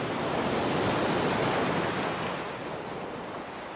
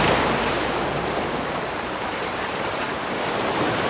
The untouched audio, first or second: first